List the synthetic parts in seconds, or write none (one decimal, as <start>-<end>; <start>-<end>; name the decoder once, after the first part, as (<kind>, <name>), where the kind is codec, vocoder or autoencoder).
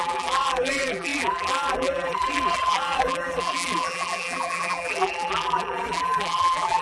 0.0-6.8 (vocoder, BigVGAN v2)